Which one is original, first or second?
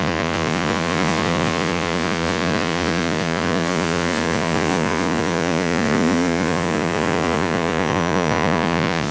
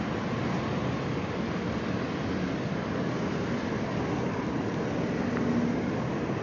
second